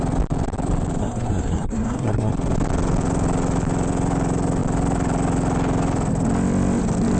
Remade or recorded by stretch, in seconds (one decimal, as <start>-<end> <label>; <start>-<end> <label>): 0.0-1.0 recorded; 1.0-2.3 remade; 2.3-7.2 recorded